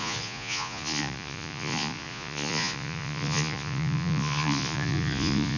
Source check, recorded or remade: remade